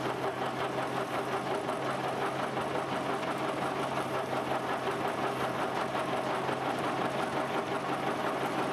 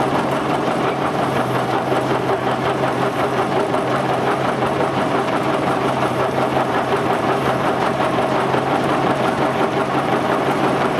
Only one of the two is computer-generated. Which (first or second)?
second